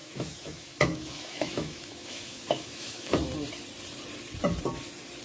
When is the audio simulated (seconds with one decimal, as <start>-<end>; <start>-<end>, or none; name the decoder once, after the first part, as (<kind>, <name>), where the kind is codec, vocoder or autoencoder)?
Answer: 0.0-3.1 (autoencoder, DAC-VAE)

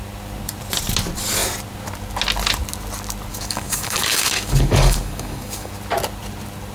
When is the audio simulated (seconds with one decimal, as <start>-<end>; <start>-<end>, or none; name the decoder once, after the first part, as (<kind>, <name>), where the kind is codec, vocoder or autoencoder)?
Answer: 3.3-5.7 (codec, DAC)

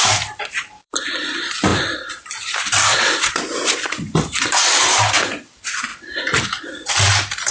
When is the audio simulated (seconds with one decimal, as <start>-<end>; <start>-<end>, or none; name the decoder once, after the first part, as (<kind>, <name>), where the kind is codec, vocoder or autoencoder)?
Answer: 0.0-5.9 (vocoder, BigVGAN v2); 6.9-7.5

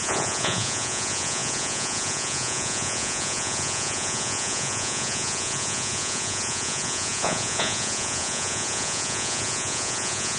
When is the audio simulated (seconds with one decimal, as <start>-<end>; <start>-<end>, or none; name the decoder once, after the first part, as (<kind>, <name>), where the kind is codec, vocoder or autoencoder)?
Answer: 0.0-10.4 (vocoder, Vocos)

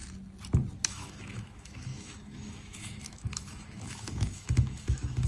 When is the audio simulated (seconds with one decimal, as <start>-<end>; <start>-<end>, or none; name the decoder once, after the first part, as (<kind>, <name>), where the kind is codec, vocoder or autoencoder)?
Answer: 0.8-5.3 (autoencoder, DAC-VAE)

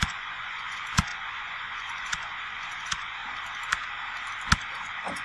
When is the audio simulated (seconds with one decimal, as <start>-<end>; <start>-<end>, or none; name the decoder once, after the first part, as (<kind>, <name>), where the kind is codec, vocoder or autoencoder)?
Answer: 0.0-3.2 (vocoder, Vocos); 4.7-5.2

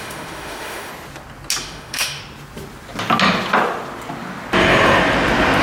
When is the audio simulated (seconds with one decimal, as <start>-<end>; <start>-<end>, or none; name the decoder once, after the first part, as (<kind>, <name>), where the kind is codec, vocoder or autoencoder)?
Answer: 0.0-0.9 (autoencoder, DAC-VAE); 1.6-2.2

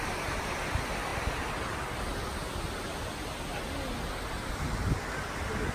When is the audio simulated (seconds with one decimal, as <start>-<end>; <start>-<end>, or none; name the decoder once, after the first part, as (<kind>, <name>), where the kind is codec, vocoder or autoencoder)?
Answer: none